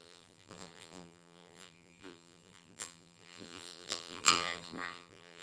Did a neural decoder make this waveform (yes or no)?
yes